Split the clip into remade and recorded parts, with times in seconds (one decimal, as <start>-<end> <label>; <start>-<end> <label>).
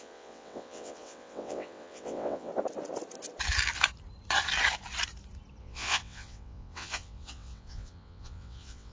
0.0-2.5 remade; 2.5-5.6 recorded; 5.6-8.9 remade